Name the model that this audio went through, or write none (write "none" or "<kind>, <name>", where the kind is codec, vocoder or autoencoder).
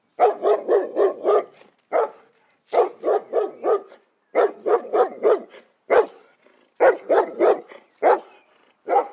none